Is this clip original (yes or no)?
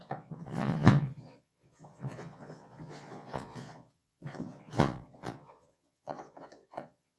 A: no